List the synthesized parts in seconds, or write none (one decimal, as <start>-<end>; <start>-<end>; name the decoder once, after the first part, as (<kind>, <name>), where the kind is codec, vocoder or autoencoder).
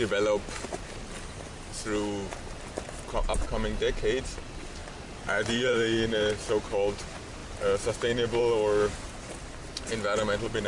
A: 4.8-6.3 (vocoder, BigVGAN v2)